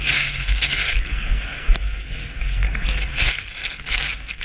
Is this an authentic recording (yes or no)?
no